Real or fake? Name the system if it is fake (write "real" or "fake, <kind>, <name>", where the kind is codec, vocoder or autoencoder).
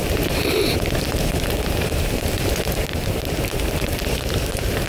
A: fake, vocoder, BigVGAN v2